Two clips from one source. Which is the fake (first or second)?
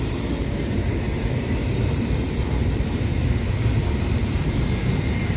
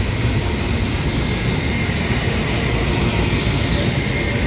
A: first